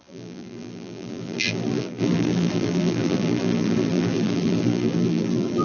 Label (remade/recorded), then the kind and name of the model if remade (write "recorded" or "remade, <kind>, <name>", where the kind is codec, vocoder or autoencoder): remade, vocoder, BigVGAN v2